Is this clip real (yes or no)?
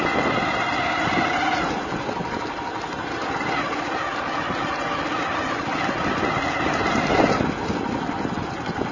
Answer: yes